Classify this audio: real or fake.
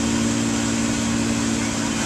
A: real